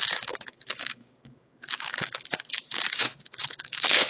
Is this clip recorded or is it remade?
remade